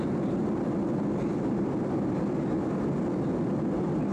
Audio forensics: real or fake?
real